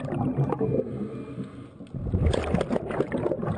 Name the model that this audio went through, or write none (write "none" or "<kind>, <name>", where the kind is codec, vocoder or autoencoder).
none